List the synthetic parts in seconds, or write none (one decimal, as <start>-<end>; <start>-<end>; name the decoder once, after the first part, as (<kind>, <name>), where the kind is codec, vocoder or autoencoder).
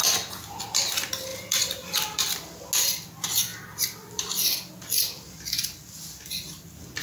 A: 0.0-0.6 (vocoder, BigVGAN v2); 1.3-2.6; 3.5-4.7